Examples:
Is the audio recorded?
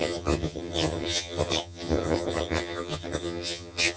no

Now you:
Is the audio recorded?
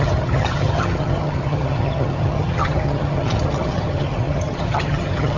no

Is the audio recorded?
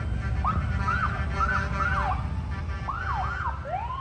yes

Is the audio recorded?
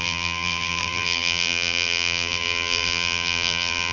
no